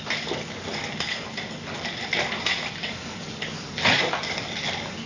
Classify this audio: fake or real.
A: real